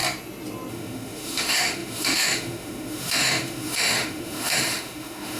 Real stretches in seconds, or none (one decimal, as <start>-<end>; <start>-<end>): 0.0-0.7